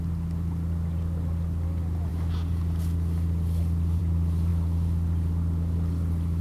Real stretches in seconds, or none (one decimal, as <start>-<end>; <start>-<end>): 0.0-6.4